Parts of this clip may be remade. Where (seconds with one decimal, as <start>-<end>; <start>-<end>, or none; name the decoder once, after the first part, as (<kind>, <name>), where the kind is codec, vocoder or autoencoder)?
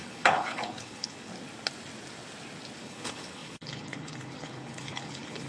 0.0-1.3 (codec, HILCodec); 2.8-5.5